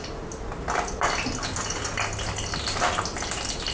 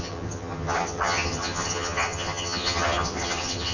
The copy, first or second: second